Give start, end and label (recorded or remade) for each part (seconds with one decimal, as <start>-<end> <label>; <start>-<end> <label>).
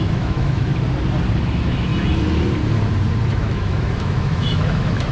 0.0-0.7 remade; 0.7-1.4 recorded; 1.4-1.9 remade; 1.9-3.3 recorded; 3.3-5.1 remade